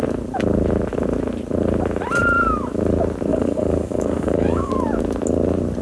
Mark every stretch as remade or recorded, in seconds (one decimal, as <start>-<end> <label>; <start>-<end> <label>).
0.0-3.3 recorded; 3.3-4.7 remade; 4.7-5.8 recorded